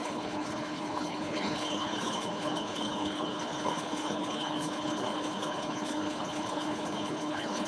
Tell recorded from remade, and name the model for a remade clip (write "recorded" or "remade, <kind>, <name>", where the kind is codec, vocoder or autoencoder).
remade, codec, HILCodec